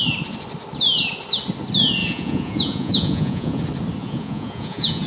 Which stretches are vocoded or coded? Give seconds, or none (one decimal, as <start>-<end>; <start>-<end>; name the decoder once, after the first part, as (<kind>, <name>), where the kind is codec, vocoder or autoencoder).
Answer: 2.0-3.6 (vocoder, Vocos); 4.0-5.1